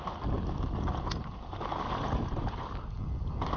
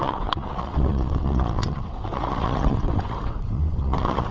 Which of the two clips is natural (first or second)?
first